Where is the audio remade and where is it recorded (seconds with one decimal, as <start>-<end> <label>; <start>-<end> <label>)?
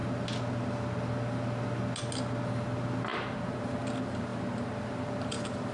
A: 0.0-3.1 recorded; 3.1-3.6 remade; 3.6-5.7 recorded